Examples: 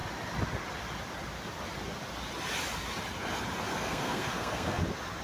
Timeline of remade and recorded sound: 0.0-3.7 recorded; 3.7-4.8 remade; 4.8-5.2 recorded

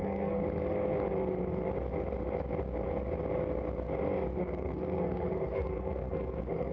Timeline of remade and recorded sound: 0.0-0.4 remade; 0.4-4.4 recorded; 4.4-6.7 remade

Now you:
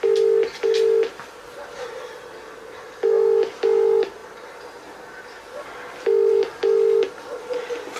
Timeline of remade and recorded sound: 0.0-8.0 recorded

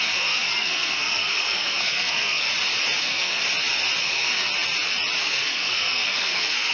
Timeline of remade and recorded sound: 0.0-2.5 remade; 2.5-3.0 recorded; 3.0-3.4 remade; 3.4-4.0 recorded; 4.0-4.5 remade; 4.5-5.2 recorded; 5.2-6.7 remade